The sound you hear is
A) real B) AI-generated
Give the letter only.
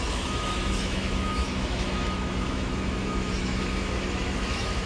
B